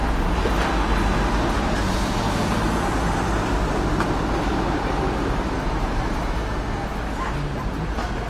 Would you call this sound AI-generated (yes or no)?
no